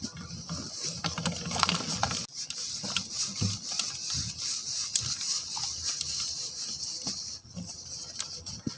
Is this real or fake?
real